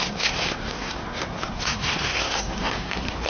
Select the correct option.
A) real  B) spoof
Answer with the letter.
B